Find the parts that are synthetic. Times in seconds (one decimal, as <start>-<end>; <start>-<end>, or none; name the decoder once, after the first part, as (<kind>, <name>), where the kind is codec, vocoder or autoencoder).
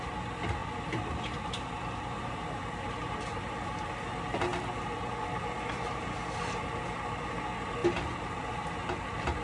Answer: none